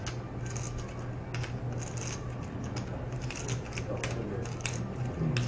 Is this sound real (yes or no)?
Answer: yes